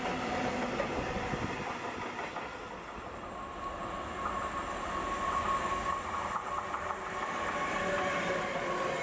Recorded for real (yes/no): yes